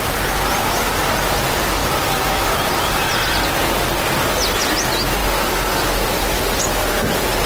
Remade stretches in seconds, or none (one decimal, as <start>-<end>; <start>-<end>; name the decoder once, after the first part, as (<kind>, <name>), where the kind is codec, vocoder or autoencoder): 1.8-3.3 (vocoder, BigVGAN v2)

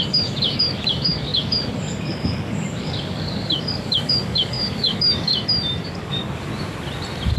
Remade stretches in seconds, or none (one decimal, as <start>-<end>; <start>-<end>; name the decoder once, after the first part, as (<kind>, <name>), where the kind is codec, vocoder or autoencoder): 0.0-5.3 (codec, DAC); 5.8-6.5